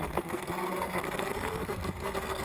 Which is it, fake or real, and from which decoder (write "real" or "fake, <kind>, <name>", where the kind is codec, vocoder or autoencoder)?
fake, codec, SNAC